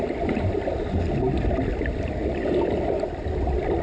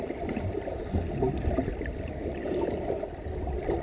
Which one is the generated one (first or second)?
second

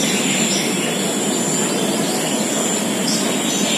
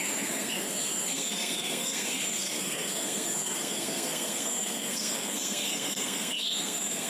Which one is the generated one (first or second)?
second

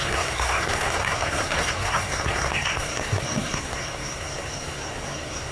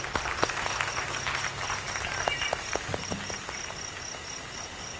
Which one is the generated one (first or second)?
first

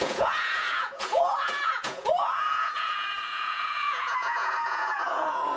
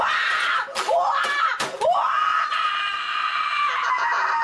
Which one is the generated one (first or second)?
first